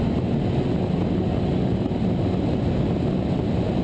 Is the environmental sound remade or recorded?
recorded